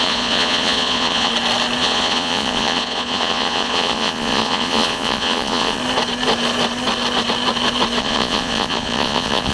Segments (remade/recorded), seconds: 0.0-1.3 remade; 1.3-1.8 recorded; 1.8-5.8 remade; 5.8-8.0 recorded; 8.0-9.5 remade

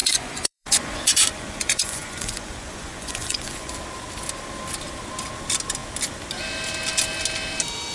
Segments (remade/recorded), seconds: 0.0-3.7 remade; 3.7-7.9 recorded

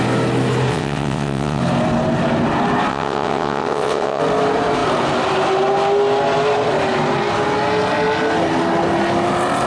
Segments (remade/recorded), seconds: 0.0-0.7 recorded; 0.7-1.6 remade; 1.6-2.9 recorded; 2.9-4.2 remade; 4.2-9.7 recorded

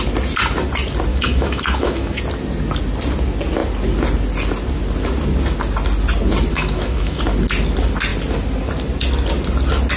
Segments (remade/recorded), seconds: 0.0-1.1 recorded; 1.1-2.2 remade; 2.2-6.5 recorded; 6.5-7.2 remade; 7.2-10.0 recorded